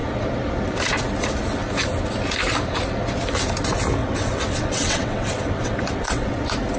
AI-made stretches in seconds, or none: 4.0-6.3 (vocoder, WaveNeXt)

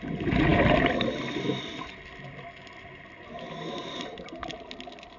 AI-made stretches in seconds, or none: 3.8-4.4 (vocoder, BigVGAN v2)